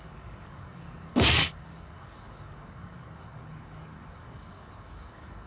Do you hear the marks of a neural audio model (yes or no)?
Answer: yes